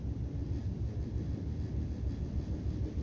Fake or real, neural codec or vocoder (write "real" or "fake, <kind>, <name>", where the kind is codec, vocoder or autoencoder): real